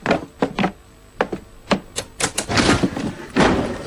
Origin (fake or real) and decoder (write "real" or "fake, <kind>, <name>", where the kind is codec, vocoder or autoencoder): real